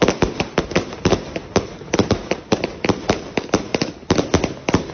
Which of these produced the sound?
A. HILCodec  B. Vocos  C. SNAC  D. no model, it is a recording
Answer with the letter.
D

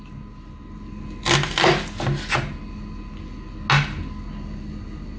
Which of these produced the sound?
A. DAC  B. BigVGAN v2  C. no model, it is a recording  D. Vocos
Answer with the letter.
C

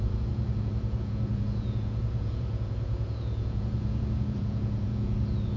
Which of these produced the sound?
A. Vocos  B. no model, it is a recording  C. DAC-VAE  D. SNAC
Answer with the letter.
A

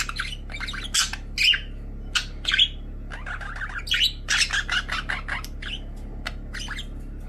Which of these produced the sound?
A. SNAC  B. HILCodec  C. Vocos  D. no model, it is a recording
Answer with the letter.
D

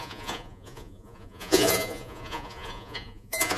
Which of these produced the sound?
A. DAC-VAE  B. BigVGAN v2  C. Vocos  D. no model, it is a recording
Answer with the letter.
C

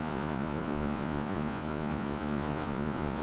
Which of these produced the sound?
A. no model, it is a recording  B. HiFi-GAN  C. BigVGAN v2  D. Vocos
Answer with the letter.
D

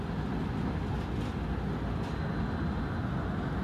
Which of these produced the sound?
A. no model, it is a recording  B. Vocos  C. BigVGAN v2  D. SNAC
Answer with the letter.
A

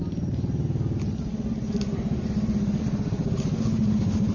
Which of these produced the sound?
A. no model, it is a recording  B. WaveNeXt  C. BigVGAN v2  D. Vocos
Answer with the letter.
A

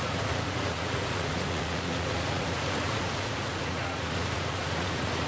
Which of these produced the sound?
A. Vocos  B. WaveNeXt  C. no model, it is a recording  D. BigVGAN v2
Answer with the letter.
A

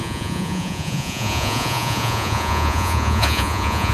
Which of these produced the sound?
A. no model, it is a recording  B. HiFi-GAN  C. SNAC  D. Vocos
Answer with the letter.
D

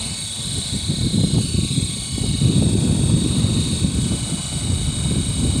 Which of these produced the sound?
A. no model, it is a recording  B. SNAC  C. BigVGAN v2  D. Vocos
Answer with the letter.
A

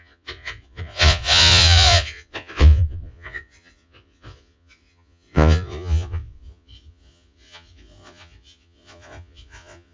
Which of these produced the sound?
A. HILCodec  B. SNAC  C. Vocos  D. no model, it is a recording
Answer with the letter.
C